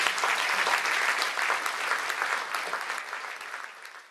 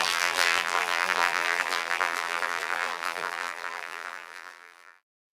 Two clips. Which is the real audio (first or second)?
first